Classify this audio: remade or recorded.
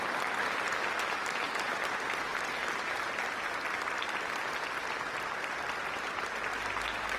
recorded